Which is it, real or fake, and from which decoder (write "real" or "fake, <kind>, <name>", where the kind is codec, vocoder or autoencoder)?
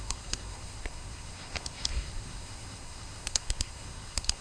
fake, codec, SNAC